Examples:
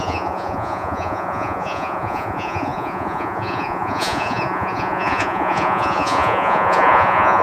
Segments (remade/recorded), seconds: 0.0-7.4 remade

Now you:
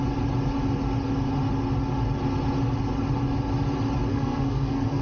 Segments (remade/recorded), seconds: 0.0-4.1 recorded; 4.1-5.0 remade

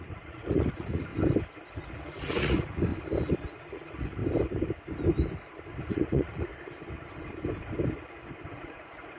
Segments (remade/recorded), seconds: 0.0-1.1 remade; 1.1-1.7 recorded; 1.7-2.9 remade; 2.9-3.7 recorded; 3.7-4.2 remade; 4.2-5.8 recorded; 5.8-6.5 remade; 6.5-8.5 recorded; 8.5-9.2 remade

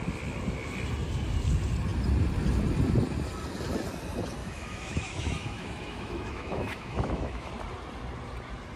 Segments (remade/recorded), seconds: 0.0-4.4 recorded; 4.4-7.5 remade; 7.5-8.8 recorded

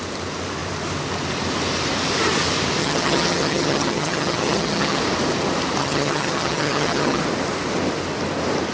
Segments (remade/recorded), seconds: 0.0-2.8 recorded; 2.8-5.0 remade; 5.0-5.8 recorded; 5.8-7.2 remade; 7.2-8.7 recorded

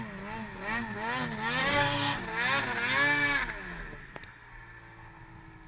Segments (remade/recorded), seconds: 0.0-1.6 recorded; 1.6-2.2 remade; 2.2-4.0 recorded; 4.0-4.5 remade; 4.5-5.7 recorded

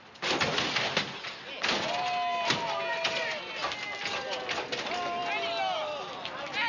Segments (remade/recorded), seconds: 0.0-6.7 recorded